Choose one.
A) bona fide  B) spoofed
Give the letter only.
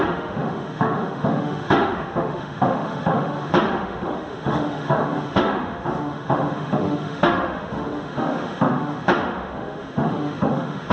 B